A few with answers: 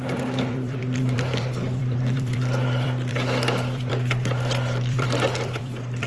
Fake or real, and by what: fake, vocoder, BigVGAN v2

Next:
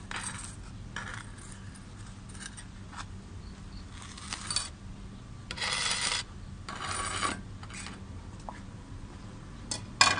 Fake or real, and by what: real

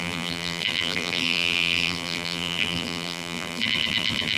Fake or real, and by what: fake, vocoder, BigVGAN v2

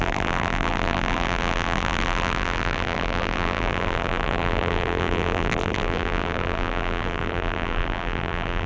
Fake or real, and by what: fake, vocoder, BigVGAN v2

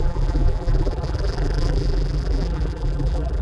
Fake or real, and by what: fake, vocoder, BigVGAN v2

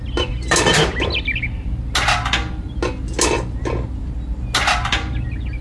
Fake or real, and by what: real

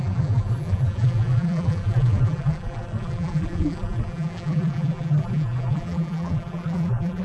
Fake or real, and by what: fake, vocoder, BigVGAN v2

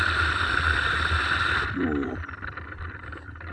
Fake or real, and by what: fake, vocoder, BigVGAN v2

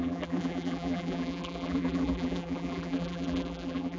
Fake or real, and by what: fake, vocoder, BigVGAN v2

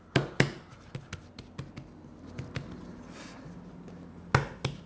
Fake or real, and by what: real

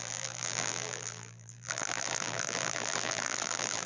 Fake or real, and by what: fake, vocoder, BigVGAN v2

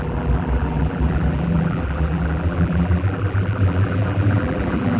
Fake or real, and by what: fake, vocoder, BigVGAN v2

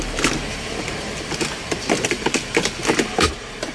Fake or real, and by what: fake, vocoder, BigVGAN v2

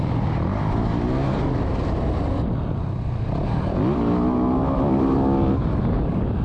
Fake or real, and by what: real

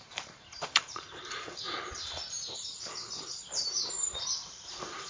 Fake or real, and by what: fake, vocoder, BigVGAN v2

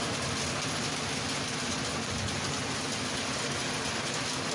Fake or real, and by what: real